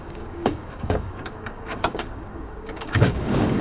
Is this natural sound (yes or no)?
no